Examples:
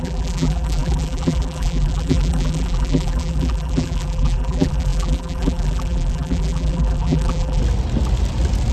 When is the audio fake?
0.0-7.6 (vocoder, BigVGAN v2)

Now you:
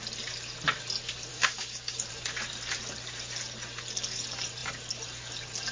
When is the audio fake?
1.3-2.1 (codec, DAC)

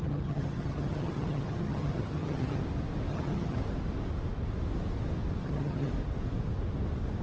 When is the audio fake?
0.0-2.6 (vocoder, HiFi-GAN); 3.1-3.6; 5.4-5.9